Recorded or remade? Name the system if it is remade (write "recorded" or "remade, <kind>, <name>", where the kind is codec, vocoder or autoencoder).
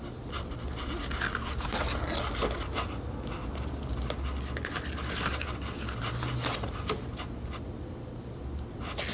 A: recorded